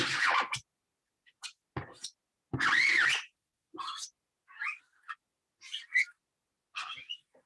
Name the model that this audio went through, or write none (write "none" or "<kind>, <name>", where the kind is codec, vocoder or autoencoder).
none